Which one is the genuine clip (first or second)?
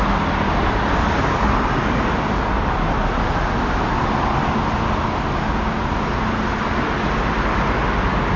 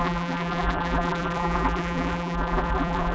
first